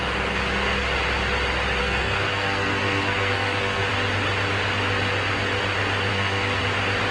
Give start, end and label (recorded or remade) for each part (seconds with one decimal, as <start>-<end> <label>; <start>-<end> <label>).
0.0-1.8 recorded; 1.8-3.9 remade; 3.9-6.1 recorded; 6.1-6.6 remade; 6.6-7.1 recorded